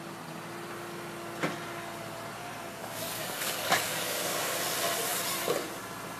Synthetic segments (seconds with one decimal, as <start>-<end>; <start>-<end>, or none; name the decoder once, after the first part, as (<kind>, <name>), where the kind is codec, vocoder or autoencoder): 2.8-4.6 (codec, DAC)